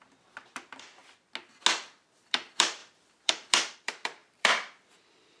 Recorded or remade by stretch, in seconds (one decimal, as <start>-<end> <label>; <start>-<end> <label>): 0.0-1.0 remade; 1.0-1.9 recorded; 1.9-5.4 remade